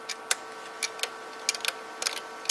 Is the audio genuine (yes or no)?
yes